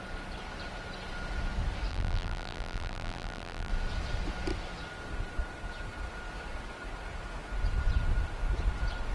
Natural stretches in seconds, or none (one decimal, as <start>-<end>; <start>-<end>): 0.0-1.9; 3.7-9.1